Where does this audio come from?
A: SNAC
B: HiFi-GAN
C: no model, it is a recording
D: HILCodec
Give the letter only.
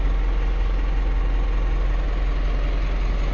C